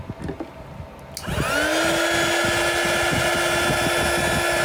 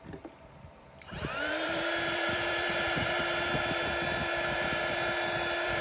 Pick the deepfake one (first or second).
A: second